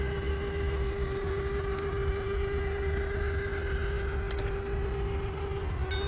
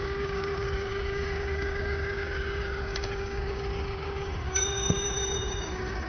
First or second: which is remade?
second